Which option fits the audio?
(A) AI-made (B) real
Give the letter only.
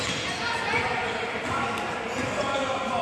B